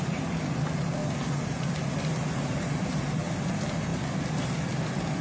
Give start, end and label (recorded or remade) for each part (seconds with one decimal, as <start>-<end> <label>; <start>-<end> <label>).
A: 0.0-5.2 recorded